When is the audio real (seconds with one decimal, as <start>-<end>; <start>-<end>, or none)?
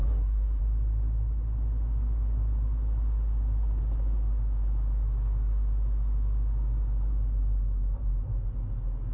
0.6-9.1